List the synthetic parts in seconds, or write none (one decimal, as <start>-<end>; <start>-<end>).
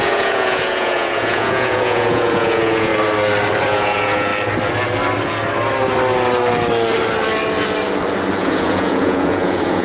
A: 0.0-2.9; 3.6-4.3; 8.4-9.8